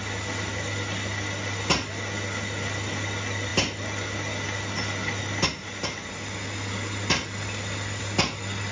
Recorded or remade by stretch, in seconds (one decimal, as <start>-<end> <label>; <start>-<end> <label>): 0.0-8.7 recorded